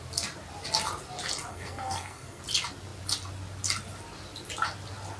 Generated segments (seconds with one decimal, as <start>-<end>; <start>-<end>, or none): 1.5-2.4